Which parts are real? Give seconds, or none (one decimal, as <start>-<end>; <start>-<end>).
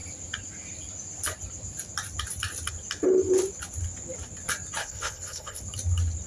0.0-4.8; 5.6-6.3